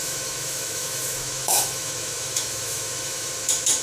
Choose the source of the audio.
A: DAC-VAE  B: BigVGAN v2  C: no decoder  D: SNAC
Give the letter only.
A